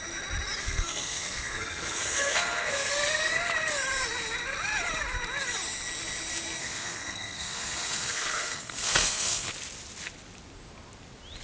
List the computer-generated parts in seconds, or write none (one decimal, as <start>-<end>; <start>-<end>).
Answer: 0.6-2.9; 6.6-9.5